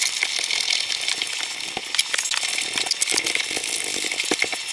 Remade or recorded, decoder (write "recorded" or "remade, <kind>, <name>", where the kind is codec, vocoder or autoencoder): recorded